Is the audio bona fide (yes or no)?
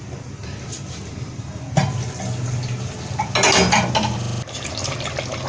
yes